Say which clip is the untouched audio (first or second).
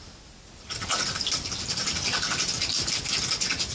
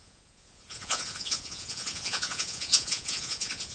first